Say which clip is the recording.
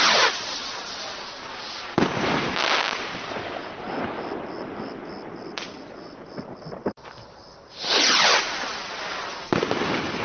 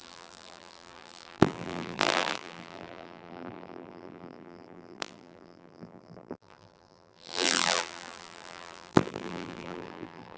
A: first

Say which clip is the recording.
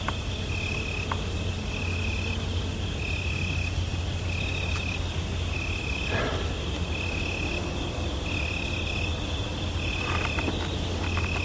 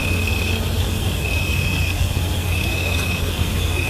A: first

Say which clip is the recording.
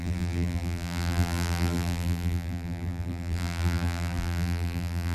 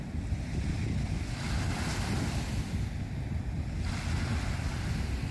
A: second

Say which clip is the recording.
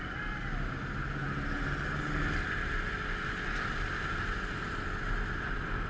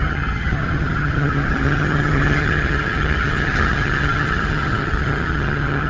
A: first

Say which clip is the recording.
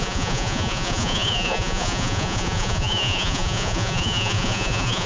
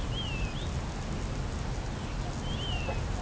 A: second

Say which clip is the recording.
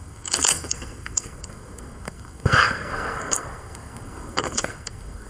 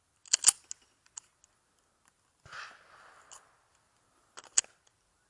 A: second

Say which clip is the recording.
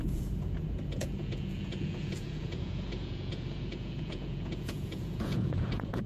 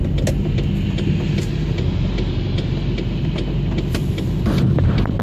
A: second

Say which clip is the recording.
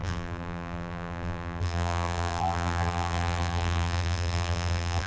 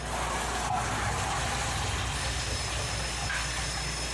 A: second